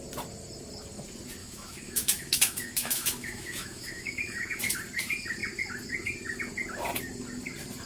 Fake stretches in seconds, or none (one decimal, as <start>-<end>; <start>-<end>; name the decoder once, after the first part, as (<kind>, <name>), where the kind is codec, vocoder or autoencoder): 1.4-4.6 (autoencoder, DAC-VAE)